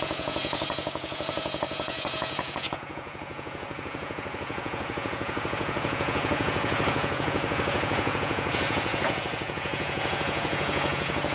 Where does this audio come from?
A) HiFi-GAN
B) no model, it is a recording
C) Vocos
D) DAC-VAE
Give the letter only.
C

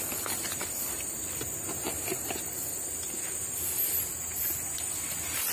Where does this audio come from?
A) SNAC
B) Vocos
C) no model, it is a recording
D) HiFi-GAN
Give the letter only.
C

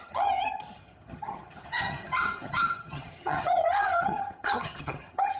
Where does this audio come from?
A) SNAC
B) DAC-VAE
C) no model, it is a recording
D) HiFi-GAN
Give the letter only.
D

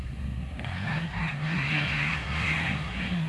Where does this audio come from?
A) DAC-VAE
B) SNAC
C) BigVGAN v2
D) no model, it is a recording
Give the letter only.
B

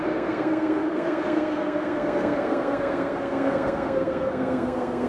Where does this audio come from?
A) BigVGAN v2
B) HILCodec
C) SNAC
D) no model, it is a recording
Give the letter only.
C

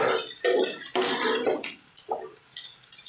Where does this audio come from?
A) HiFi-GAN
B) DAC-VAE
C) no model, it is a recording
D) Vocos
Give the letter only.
C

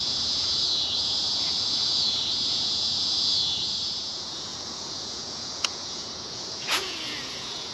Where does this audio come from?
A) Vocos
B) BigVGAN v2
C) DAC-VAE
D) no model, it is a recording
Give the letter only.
A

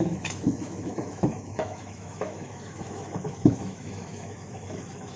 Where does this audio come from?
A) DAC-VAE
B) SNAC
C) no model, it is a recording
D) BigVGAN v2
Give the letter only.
A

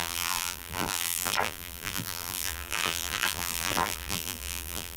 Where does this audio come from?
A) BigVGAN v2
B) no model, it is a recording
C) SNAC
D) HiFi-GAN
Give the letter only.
A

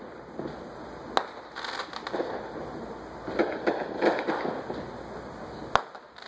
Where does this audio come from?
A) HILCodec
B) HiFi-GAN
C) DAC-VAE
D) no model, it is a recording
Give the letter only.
D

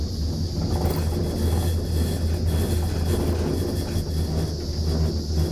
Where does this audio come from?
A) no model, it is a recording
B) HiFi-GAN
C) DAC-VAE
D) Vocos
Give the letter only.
A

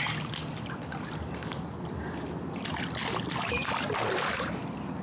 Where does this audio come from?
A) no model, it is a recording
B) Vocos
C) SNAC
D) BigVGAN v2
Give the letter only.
A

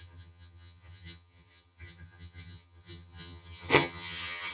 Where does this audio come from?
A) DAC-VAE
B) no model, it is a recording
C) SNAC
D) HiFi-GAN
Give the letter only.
D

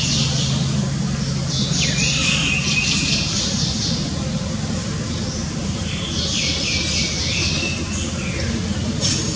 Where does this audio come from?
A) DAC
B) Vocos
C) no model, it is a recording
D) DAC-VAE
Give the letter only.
C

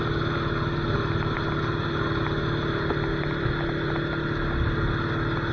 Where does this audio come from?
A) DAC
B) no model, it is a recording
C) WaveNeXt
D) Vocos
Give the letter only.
B